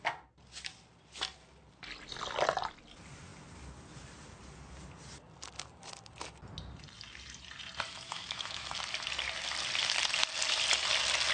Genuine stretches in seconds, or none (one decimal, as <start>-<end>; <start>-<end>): 0.0-7.9; 8.8-11.3

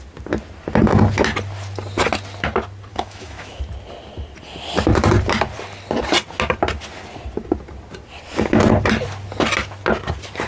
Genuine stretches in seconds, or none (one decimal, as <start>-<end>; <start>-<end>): 0.0-2.9; 3.6-10.5

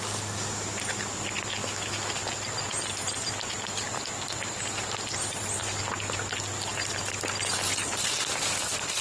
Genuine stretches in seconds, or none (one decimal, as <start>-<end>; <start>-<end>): 0.0-1.6; 2.1-9.0

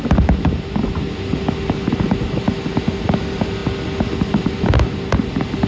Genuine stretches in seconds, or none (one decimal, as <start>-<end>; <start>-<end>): 0.0-5.7

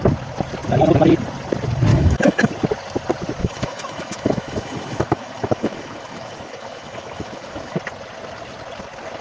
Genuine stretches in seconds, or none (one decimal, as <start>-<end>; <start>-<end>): 0.0-1.9; 2.5-3.4; 7.8-9.2

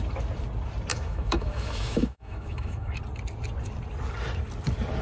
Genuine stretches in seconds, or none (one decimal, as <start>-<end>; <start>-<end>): 0.0-0.9; 2.9-5.0

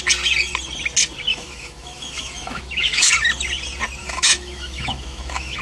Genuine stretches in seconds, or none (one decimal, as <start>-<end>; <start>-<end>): 0.0-1.3; 3.1-4.0

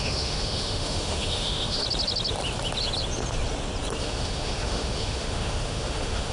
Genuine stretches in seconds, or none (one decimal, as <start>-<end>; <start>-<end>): 1.8-4.0